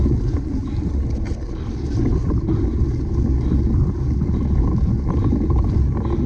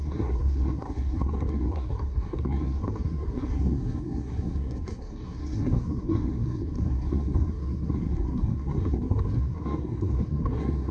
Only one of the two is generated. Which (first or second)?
second